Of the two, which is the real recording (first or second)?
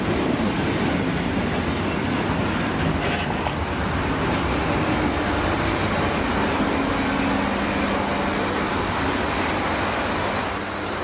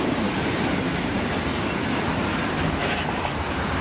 first